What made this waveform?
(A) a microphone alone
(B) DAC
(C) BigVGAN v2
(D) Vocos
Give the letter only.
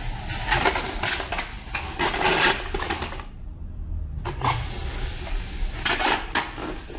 A